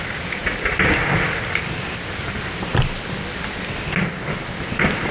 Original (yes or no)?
yes